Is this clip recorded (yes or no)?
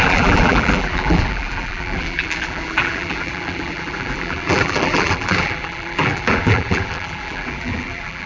no